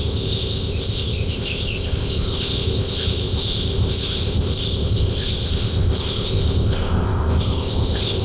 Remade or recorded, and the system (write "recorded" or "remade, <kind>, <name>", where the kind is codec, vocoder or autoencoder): remade, codec, ZipCodec